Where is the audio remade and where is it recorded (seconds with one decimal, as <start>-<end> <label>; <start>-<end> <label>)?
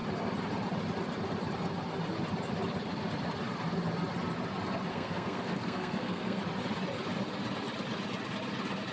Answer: 0.0-4.9 recorded; 4.9-6.4 remade; 6.4-8.9 recorded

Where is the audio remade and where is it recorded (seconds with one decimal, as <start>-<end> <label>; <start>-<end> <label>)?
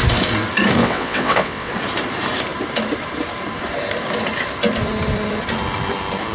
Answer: 0.0-0.8 recorded; 0.8-1.7 remade; 1.7-6.3 recorded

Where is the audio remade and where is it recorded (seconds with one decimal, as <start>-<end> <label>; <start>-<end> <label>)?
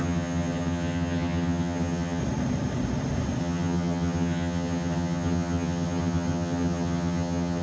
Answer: 0.0-2.2 remade; 2.2-3.4 recorded; 3.4-7.6 remade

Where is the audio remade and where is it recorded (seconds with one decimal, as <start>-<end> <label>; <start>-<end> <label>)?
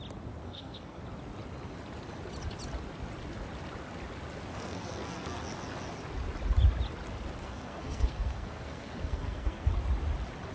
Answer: 0.0-0.4 recorded; 0.4-1.0 remade; 1.0-4.5 recorded; 4.5-5.4 remade; 5.4-7.4 recorded; 7.4-9.7 remade; 9.7-10.5 recorded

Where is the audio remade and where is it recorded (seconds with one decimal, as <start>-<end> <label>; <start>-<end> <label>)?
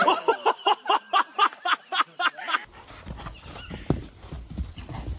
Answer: 0.0-5.2 recorded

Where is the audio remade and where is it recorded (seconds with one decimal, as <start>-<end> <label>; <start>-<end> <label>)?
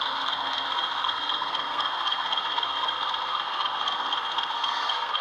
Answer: 0.0-5.2 remade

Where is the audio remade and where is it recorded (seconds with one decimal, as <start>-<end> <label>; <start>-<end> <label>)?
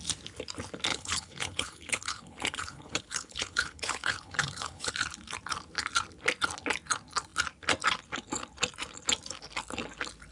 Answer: 0.0-0.9 recorded; 0.9-4.9 remade; 4.9-10.3 recorded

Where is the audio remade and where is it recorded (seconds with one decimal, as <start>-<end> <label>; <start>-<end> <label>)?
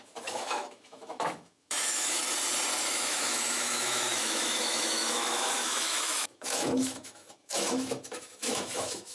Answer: 0.0-2.2 remade; 2.2-2.8 recorded; 2.8-9.1 remade